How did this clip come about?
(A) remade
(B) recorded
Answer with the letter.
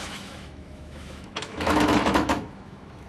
A